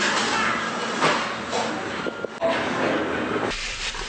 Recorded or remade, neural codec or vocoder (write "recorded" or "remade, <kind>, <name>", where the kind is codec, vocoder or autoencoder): recorded